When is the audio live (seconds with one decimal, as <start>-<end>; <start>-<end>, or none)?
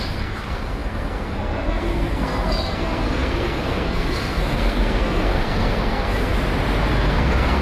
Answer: 6.3-6.9